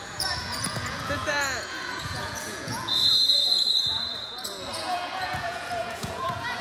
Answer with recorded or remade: remade